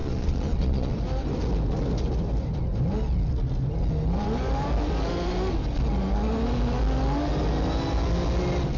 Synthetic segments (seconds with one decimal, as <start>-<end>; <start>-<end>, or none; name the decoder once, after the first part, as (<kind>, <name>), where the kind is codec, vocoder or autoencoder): 0.0-0.9 (vocoder, Vocos)